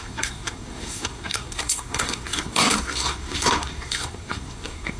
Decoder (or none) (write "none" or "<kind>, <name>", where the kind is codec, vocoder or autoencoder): codec, SNAC